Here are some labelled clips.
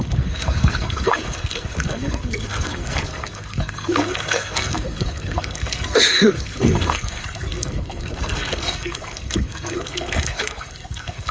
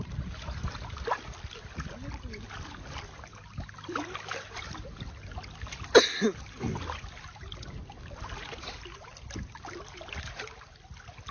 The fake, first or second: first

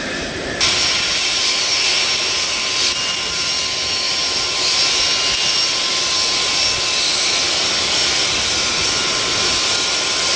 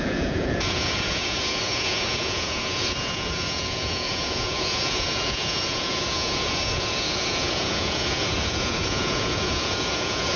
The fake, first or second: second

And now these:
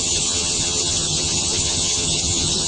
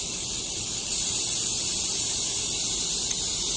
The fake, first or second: first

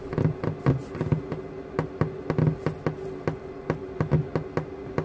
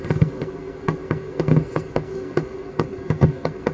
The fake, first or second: second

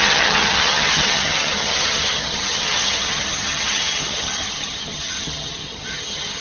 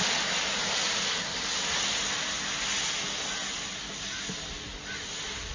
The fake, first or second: first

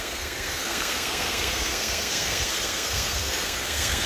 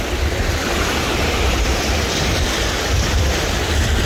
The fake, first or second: first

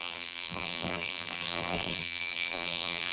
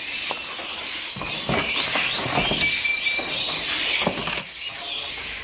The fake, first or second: first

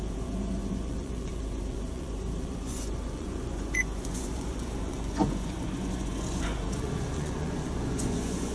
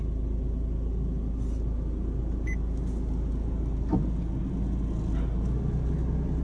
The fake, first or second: first